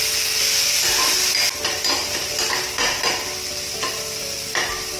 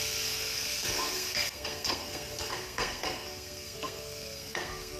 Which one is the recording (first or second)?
first